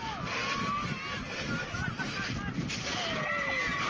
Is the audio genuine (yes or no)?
yes